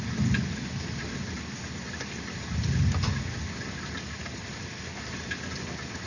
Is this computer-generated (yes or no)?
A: no